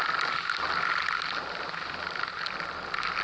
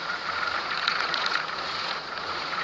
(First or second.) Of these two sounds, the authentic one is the first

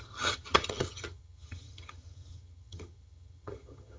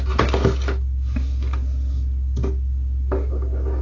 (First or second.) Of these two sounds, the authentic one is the second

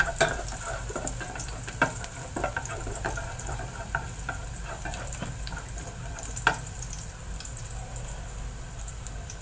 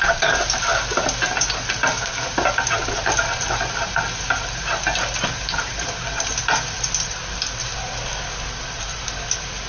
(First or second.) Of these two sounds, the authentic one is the second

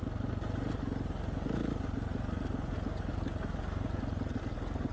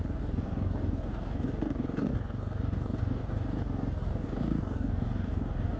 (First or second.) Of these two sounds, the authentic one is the first